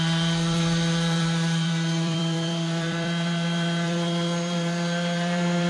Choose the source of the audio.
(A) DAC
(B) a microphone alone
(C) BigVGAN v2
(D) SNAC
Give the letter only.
C